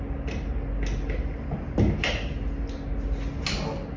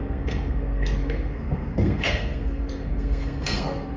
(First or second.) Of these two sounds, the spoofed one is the second